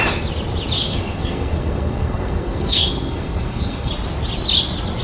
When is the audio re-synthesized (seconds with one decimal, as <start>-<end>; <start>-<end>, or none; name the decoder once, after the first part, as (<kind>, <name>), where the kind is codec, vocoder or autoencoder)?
0.9-3.9 (codec, SNAC)